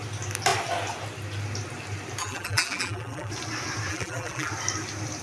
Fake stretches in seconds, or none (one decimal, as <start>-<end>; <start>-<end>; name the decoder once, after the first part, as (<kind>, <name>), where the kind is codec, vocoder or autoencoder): 2.2-3.3 (vocoder, BigVGAN v2); 3.9-4.5